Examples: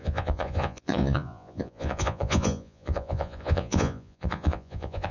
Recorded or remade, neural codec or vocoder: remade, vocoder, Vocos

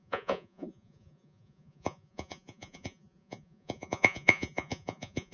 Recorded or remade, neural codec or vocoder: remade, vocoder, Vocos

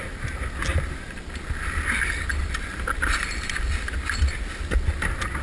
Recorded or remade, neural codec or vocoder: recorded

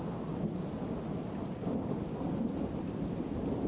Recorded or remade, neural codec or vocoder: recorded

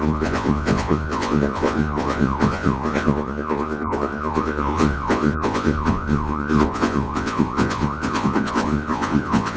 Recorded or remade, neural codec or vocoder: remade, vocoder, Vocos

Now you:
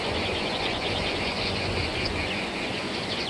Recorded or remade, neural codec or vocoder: remade, vocoder, Vocos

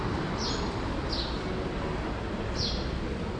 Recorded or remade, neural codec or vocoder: recorded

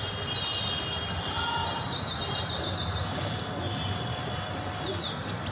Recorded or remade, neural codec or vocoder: recorded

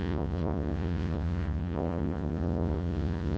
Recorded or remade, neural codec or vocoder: remade, vocoder, Vocos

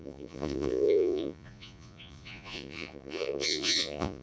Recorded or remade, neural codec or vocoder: remade, vocoder, Vocos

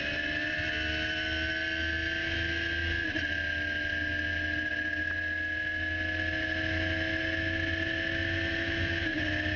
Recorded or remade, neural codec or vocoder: recorded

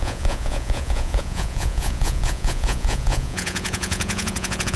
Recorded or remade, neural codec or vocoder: remade, vocoder, Vocos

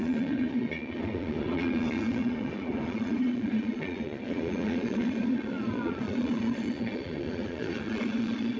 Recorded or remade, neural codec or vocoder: remade, vocoder, Vocos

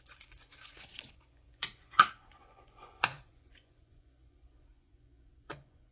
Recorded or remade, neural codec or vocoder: remade, vocoder, Vocos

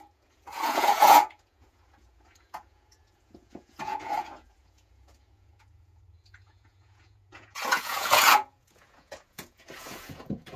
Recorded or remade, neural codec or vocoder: remade, vocoder, Vocos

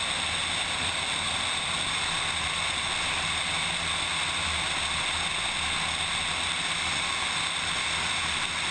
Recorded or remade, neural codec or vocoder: recorded